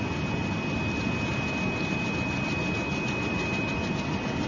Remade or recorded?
recorded